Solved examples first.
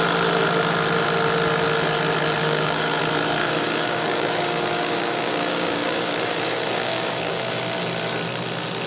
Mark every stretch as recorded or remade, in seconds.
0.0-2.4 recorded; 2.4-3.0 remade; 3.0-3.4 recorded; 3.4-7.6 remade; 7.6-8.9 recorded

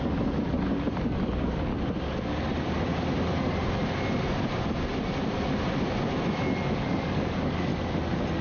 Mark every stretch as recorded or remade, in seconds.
0.0-1.7 remade; 1.7-6.7 recorded; 6.7-7.7 remade; 7.7-8.4 recorded

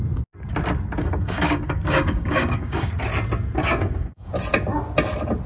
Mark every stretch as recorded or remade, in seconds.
0.0-1.0 recorded; 1.0-2.9 remade; 2.9-3.6 recorded; 3.6-4.3 remade; 4.3-5.5 recorded

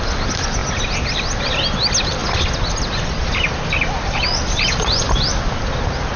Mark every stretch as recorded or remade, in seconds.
0.0-6.2 recorded

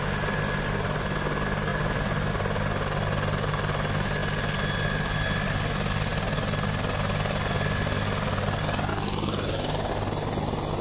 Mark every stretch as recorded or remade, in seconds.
0.0-8.9 recorded; 8.9-9.9 remade; 9.9-10.8 recorded

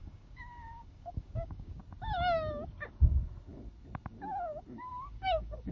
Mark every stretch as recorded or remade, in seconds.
0.0-1.8 remade; 1.8-4.9 recorded; 4.9-5.7 remade